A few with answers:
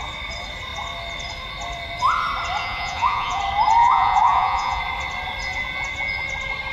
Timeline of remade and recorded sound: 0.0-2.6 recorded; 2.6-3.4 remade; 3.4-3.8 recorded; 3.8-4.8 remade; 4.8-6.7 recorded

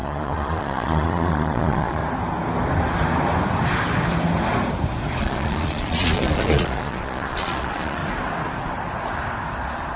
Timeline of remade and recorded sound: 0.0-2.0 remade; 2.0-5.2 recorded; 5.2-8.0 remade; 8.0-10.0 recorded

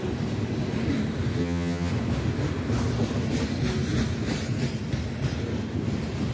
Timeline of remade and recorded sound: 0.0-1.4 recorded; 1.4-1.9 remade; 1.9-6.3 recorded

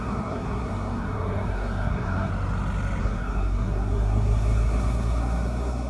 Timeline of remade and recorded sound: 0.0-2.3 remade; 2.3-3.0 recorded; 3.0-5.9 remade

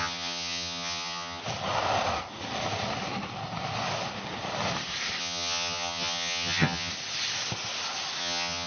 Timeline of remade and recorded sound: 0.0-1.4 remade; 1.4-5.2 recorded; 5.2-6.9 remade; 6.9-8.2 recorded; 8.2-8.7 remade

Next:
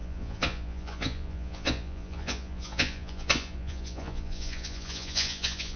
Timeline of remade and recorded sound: 0.0-5.8 remade

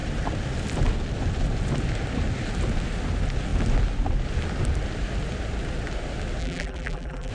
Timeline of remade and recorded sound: 0.0-6.4 recorded; 6.4-7.3 remade

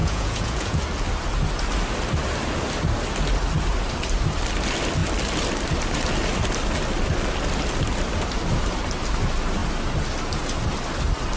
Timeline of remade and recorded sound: 0.0-0.8 remade; 0.8-11.4 recorded